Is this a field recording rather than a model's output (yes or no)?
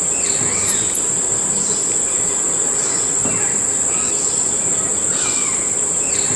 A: yes